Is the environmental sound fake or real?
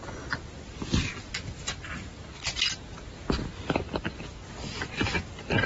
real